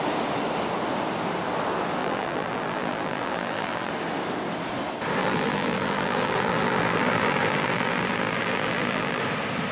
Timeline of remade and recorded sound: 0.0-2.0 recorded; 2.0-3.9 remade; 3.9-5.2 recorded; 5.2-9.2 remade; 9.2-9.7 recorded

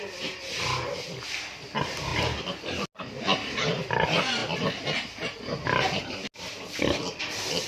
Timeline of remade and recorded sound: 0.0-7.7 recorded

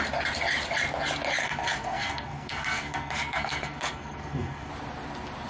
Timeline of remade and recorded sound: 0.0-1.4 recorded; 1.4-4.7 remade; 4.7-5.5 recorded